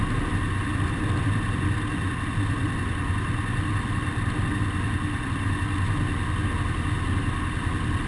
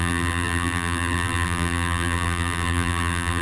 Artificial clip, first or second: second